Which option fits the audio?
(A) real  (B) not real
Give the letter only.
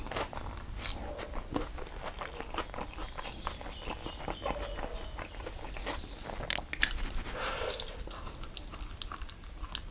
A